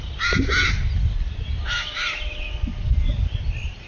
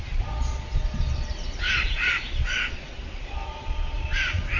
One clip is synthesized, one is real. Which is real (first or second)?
first